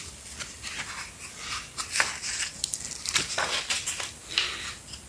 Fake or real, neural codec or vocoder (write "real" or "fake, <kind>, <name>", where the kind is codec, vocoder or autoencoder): real